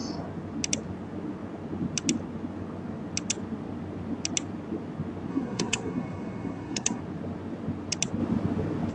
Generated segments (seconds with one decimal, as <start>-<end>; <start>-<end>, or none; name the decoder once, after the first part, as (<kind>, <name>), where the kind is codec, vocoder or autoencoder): 5.3-7.0 (codec, SNAC)